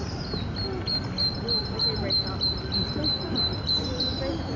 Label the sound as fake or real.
real